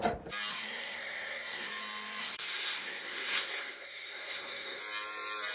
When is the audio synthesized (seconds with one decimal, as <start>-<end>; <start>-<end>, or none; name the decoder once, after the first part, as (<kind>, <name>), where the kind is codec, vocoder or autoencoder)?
0.5-1.7 (codec, SNAC); 2.2-4.8